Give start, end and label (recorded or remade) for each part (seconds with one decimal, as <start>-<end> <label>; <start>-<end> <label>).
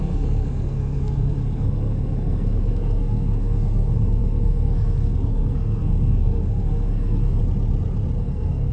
0.0-7.4 remade; 7.4-8.2 recorded; 8.2-8.7 remade